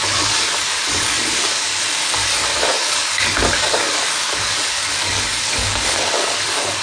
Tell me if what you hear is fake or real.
fake